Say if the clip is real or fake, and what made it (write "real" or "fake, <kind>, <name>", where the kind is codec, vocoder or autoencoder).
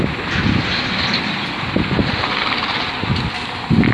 real